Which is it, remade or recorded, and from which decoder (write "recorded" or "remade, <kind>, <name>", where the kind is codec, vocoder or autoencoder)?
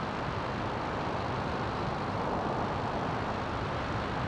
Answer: recorded